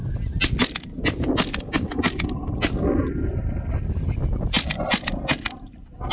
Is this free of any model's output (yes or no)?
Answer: yes